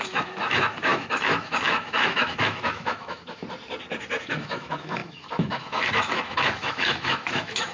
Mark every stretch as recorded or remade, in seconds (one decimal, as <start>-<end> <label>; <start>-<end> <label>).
0.0-3.4 remade; 3.4-4.2 recorded; 4.2-7.7 remade